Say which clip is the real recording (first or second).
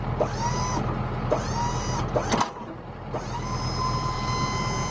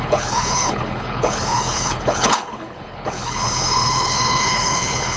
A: first